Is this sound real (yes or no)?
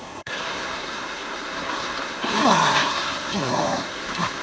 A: no